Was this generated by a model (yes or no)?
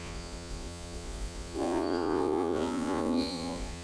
yes